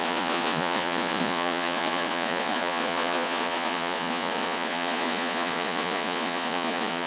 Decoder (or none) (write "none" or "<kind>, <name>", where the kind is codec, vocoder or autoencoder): vocoder, Vocos